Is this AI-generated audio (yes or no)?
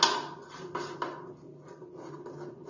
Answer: no